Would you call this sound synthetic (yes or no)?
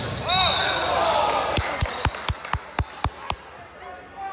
no